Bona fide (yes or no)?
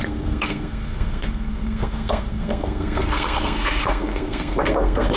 no